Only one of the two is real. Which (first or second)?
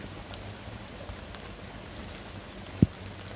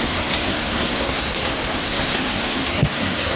first